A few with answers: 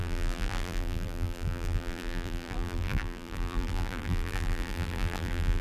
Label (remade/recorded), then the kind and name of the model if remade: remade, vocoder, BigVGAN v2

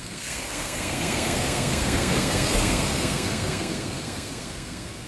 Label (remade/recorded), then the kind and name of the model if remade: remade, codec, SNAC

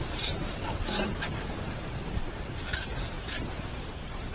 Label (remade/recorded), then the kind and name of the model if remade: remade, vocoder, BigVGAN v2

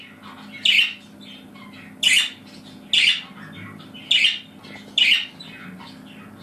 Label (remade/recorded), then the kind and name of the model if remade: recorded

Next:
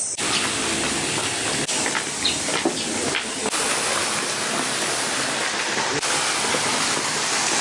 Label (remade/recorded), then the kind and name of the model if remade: recorded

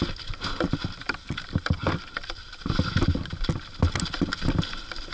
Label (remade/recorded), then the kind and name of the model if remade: recorded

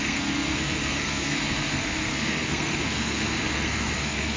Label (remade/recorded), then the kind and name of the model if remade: remade, codec, SNAC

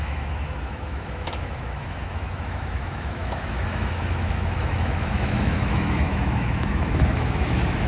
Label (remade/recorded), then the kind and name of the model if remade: remade, autoencoder, DAC-VAE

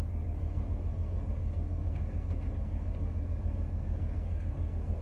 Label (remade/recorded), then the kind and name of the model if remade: remade, codec, SNAC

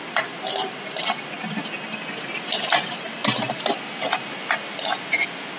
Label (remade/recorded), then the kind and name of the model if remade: recorded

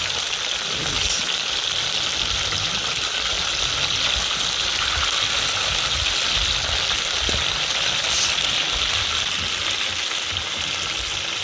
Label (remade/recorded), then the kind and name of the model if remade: recorded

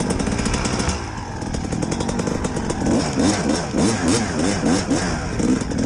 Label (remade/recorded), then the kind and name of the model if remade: recorded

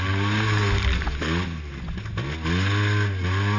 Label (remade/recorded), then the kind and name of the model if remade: recorded